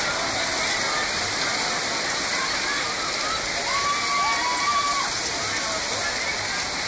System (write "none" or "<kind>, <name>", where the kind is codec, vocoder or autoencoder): none